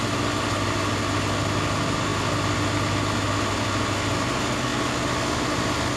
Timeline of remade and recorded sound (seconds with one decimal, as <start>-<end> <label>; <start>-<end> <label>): 0.0-6.0 recorded